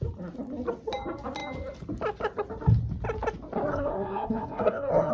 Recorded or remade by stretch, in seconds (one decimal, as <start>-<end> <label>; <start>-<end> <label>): 0.0-3.7 recorded; 3.7-5.1 remade

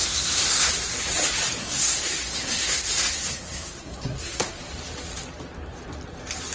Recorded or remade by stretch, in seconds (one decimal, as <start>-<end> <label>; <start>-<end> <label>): 0.0-0.7 remade; 0.7-1.6 recorded; 1.6-4.6 remade; 4.6-6.5 recorded

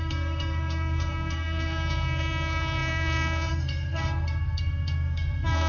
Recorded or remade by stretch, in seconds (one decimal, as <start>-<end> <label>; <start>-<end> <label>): 0.0-5.7 remade

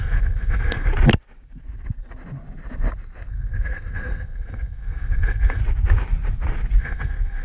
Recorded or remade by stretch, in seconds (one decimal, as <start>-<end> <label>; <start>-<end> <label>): 0.0-0.9 remade; 0.9-3.3 recorded; 3.3-5.6 remade; 5.6-6.8 recorded; 6.8-7.4 remade